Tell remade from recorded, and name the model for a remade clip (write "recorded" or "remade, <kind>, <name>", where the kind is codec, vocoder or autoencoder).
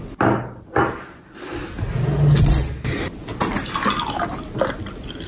recorded